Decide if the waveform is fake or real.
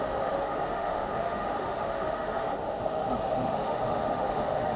fake